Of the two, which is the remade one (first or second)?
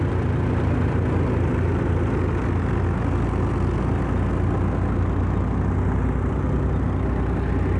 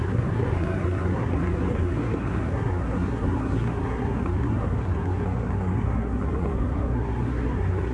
second